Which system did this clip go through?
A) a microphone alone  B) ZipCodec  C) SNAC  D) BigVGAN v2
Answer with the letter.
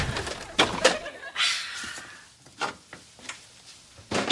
A